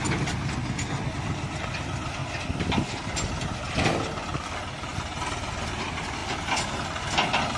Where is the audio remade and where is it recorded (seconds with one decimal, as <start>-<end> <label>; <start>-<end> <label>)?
0.0-4.9 recorded; 4.9-5.6 remade; 5.6-7.6 recorded